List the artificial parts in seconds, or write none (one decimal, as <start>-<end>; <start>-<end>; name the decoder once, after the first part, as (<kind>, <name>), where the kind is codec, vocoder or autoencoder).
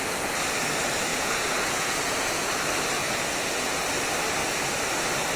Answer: 1.1-2.5 (vocoder, Vocos); 3.0-3.7